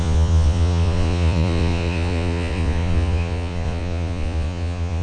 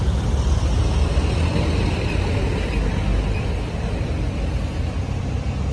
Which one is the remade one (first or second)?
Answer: first